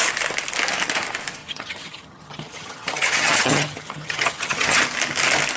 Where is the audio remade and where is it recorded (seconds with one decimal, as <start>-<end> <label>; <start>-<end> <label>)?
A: 0.0-1.4 recorded; 1.4-4.8 remade; 4.8-5.6 recorded